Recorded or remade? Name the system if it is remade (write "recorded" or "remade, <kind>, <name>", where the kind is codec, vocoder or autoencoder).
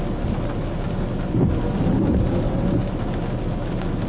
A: recorded